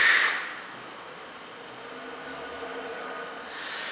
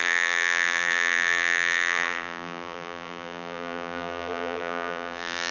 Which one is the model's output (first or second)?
second